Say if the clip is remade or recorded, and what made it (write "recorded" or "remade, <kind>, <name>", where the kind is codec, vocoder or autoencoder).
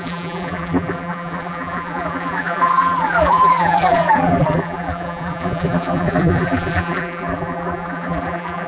remade, vocoder, BigVGAN v2